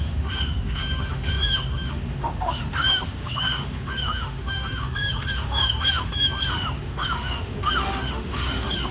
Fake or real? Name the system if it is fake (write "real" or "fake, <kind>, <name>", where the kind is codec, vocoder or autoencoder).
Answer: fake, autoencoder, DAC-VAE